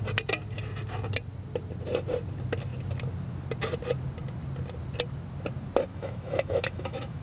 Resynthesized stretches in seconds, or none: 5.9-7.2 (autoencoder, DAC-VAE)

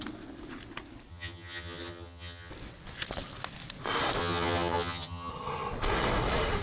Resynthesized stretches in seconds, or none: 1.1-2.5 (vocoder, HiFi-GAN); 4.2-5.3

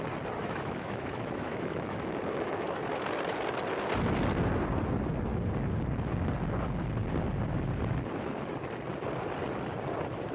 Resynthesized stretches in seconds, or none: 0.4-2.9 (autoencoder, DAC-VAE)

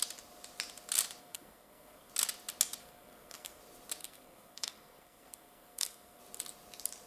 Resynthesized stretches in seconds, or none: 1.2-2.1 (codec, SNAC); 2.8-3.6; 4.0-6.2

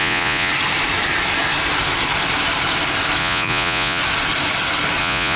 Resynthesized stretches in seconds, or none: 0.0-0.5 (vocoder, Vocos); 3.2-4.0; 5.0-5.4

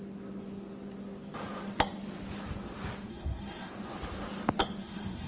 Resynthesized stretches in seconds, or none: 3.1-3.7 (codec, SNAC); 4.8-5.3